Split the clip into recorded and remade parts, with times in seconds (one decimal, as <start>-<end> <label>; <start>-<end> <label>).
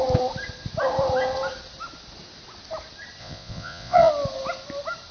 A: 0.0-3.2 recorded; 3.2-4.1 remade; 4.1-5.1 recorded